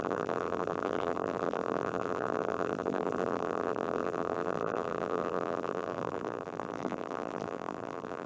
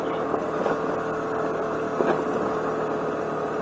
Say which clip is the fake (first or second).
first